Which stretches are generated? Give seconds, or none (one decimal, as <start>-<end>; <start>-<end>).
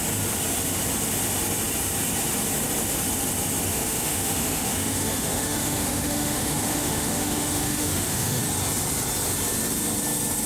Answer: 3.7-8.4